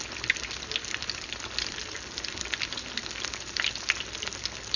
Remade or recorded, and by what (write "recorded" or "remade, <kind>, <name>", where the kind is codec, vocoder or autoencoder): recorded